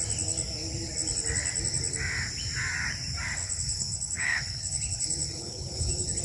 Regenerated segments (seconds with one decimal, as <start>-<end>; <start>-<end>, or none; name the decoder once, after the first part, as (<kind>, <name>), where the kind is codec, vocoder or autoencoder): 3.4-6.2 (codec, HILCodec)